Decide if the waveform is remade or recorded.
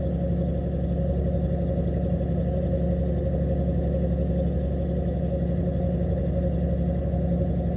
recorded